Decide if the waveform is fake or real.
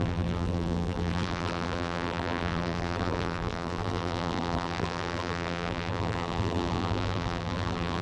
fake